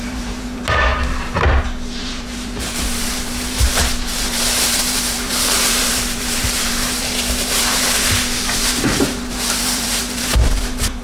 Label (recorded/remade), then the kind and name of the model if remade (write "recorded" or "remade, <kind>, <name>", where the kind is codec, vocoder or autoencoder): remade, vocoder, BigVGAN v2